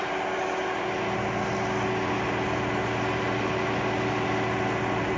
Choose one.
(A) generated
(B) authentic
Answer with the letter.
B